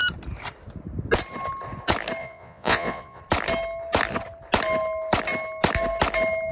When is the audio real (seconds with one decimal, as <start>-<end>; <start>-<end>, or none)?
0.0-2.2; 3.2-6.5